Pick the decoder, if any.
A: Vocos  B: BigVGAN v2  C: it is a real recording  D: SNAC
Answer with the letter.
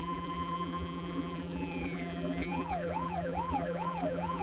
B